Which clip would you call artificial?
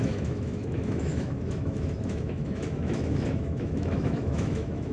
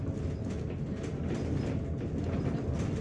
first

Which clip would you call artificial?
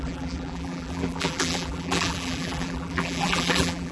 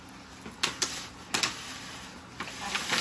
first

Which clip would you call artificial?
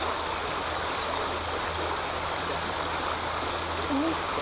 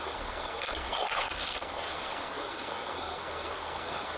second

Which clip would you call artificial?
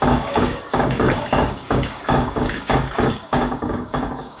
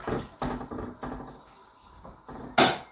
first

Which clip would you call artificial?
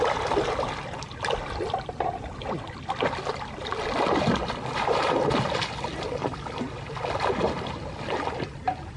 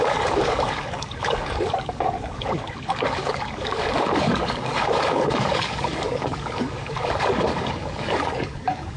second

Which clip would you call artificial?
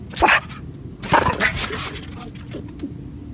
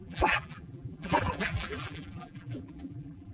second